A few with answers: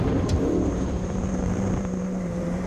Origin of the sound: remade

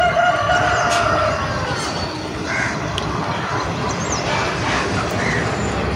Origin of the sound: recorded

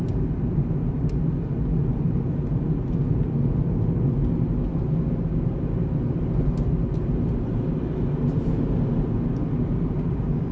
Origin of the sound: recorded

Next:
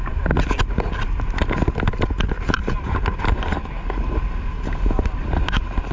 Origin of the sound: recorded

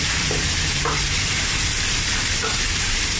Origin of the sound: remade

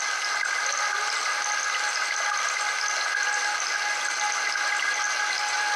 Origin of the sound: recorded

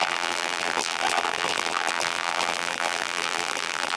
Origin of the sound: remade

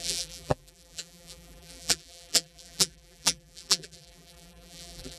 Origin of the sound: remade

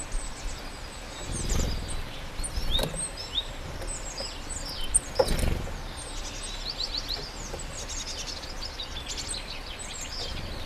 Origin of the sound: recorded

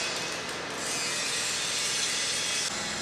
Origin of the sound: recorded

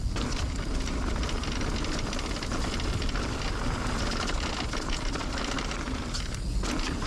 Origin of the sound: recorded